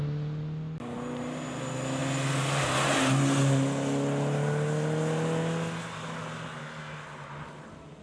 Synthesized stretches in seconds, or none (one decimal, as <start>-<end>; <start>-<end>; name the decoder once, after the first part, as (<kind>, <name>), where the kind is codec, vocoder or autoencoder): none

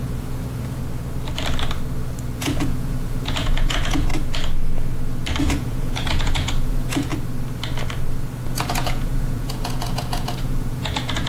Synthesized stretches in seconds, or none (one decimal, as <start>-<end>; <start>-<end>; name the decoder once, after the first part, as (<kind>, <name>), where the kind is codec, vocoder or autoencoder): 0.0-0.8 (vocoder, Vocos); 2.4-4.1; 5.4-7.1; 8.5-11.3